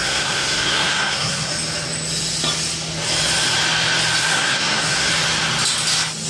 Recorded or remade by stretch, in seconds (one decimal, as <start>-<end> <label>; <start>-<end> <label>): 0.0-1.5 remade; 1.5-4.2 recorded; 4.2-5.1 remade; 5.1-6.3 recorded